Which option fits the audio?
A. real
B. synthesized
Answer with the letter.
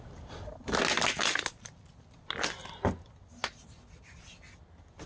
A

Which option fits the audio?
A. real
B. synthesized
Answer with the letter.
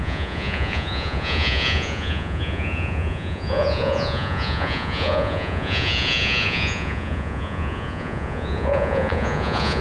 B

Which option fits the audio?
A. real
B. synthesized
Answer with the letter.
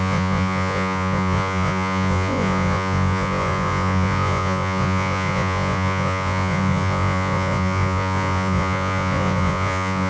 B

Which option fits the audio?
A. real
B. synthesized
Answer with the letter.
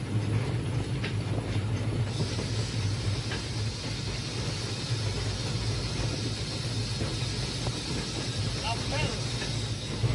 A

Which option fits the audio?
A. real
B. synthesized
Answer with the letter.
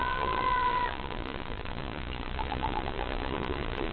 B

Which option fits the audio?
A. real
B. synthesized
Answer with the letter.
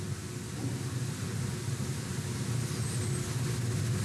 A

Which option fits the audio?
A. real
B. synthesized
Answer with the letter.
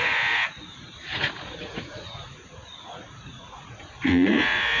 B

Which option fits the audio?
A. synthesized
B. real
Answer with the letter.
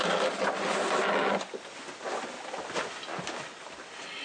B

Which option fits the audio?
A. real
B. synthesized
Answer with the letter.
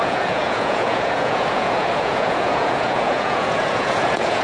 B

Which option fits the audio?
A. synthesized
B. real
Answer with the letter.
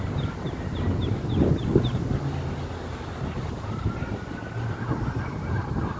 B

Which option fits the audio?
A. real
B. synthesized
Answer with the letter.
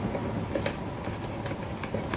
A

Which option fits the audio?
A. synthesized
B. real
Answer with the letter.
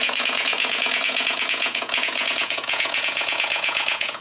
A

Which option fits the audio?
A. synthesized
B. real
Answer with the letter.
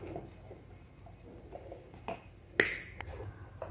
B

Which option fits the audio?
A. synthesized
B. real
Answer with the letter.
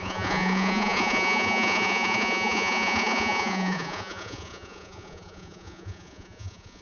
A